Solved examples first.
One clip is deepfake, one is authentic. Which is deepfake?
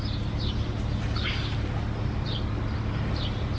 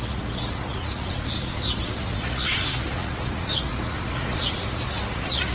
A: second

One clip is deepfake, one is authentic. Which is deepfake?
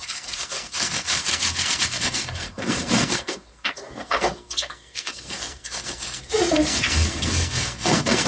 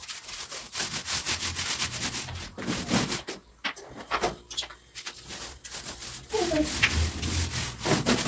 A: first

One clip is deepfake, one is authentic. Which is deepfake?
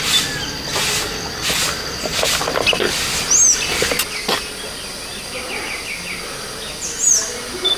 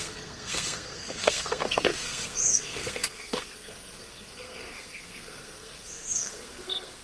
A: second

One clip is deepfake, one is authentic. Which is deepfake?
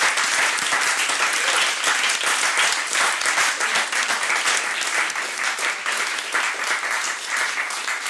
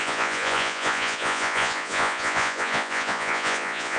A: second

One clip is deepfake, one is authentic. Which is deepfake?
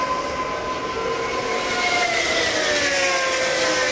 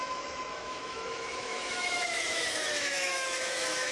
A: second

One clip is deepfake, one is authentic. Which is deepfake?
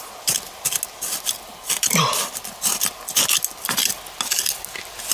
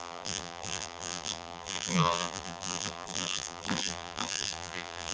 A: second